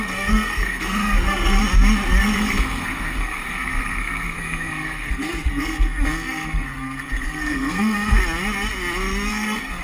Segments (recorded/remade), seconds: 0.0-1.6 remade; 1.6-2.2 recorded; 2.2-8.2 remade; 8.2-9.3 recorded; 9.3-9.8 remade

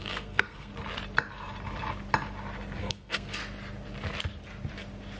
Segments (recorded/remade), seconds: 0.0-0.7 remade; 0.7-2.8 recorded; 2.8-3.4 remade; 3.4-5.2 recorded

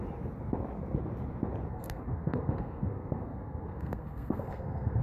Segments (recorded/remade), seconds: 0.0-1.7 recorded; 1.7-5.0 remade